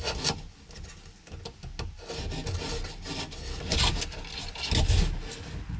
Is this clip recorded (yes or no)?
yes